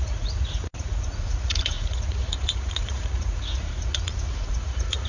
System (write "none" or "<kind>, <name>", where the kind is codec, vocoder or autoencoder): vocoder, Vocos